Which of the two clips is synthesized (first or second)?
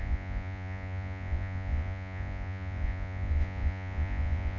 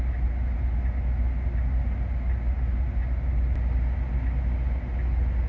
first